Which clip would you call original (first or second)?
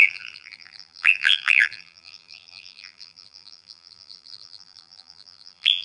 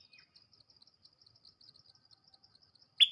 second